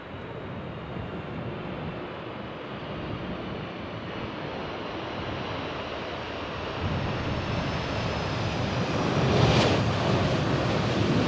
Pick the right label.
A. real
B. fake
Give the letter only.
A